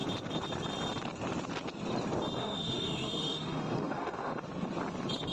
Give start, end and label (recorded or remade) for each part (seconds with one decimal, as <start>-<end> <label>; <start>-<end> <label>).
0.0-2.4 recorded; 2.4-4.5 remade; 4.5-5.3 recorded

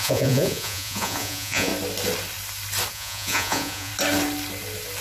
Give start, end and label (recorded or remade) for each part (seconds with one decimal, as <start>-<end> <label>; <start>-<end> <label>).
0.0-1.7 remade; 1.7-2.9 recorded; 2.9-3.9 remade; 3.9-5.0 recorded

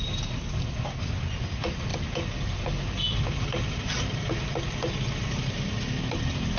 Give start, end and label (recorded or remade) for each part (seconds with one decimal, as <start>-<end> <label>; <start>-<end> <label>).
0.0-6.6 recorded

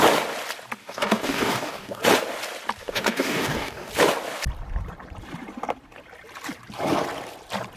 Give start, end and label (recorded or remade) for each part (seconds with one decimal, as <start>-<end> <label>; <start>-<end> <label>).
0.0-0.8 recorded; 0.8-2.0 remade; 2.0-2.8 recorded; 2.8-3.9 remade; 3.9-7.8 recorded